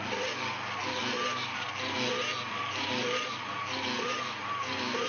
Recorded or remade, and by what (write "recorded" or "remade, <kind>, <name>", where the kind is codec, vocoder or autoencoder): recorded